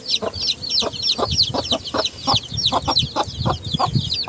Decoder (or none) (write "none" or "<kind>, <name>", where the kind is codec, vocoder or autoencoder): none